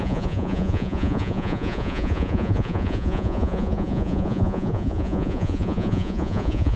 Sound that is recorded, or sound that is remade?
remade